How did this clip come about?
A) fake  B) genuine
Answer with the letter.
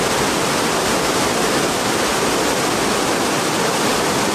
B